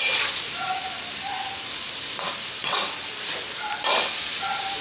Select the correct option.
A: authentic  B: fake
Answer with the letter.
B